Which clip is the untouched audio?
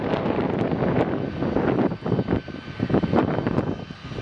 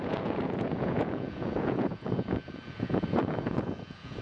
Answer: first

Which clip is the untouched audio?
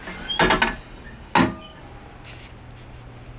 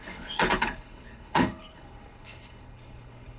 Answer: first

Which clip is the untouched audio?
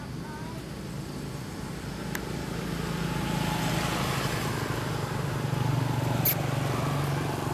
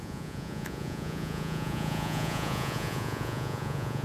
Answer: first